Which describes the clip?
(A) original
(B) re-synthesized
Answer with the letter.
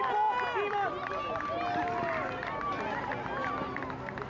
A